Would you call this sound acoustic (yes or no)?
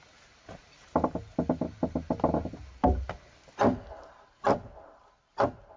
yes